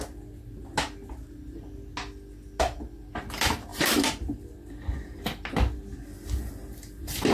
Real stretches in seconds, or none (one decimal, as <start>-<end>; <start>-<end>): 0.0-3.7; 4.3-7.3